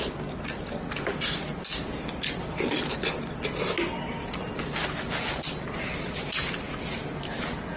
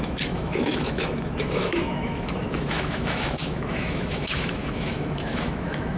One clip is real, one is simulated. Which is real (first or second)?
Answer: first